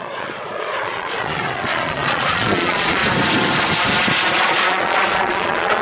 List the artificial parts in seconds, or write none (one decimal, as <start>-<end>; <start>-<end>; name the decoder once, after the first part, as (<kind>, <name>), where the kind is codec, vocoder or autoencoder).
0.0-3.0 (vocoder, Vocos); 4.4-5.8